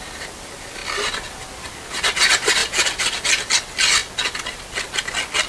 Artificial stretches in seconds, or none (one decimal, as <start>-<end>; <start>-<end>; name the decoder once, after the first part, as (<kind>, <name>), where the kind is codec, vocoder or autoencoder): none